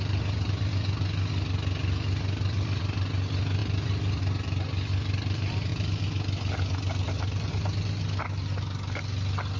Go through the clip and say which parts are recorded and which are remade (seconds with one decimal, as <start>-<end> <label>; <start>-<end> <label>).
0.0-9.6 recorded